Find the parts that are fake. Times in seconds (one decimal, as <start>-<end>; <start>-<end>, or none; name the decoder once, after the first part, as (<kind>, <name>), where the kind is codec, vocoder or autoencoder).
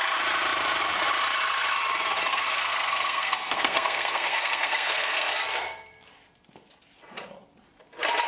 2.3-5.3 (codec, SNAC)